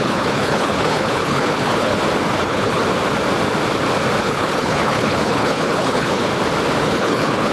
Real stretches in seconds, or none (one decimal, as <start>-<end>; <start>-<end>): 1.9-2.4; 2.8-4.2; 6.3-6.8